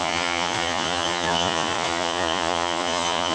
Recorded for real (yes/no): no